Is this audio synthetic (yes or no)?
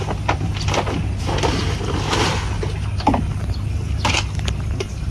no